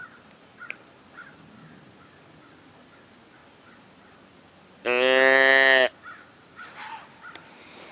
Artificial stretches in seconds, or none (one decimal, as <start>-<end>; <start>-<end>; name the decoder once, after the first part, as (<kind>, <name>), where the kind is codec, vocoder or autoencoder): none

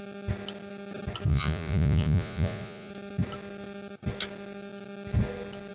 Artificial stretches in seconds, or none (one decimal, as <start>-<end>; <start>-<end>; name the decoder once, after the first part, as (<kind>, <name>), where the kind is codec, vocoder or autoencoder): 1.3-2.9 (vocoder, Vocos)

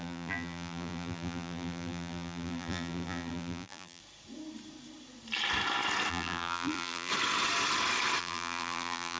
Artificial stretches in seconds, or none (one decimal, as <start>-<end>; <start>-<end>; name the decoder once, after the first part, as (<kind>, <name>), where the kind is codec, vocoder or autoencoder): 0.0-4.0 (vocoder, BigVGAN v2); 6.1-7.1; 8.2-9.2

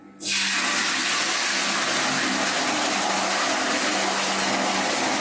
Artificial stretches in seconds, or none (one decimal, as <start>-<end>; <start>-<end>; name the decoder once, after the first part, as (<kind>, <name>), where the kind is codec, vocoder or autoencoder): none

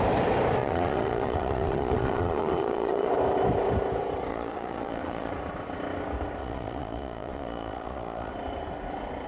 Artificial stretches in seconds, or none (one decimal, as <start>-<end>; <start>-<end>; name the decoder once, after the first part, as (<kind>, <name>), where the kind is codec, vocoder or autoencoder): 0.6-3.1 (vocoder, Vocos); 4.3-5.3; 6.4-8.3

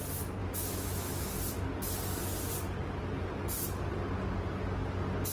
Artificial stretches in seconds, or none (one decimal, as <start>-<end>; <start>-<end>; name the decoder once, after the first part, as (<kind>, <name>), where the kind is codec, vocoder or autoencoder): 0.4-1.3 (autoencoder, DAC-VAE)

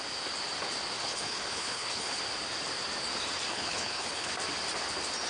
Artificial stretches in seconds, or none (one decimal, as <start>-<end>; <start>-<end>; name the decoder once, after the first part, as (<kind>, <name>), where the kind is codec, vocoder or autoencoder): 1.0-2.2 (codec, HILCodec); 3.5-4.3

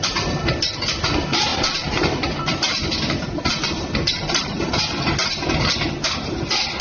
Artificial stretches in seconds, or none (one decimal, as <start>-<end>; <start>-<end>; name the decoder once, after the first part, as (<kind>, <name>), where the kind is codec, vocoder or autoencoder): 1.5-4.7 (vocoder, BigVGAN v2)